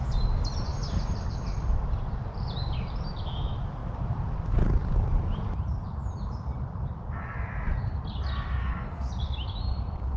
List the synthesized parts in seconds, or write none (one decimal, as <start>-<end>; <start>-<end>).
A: 8.6-9.1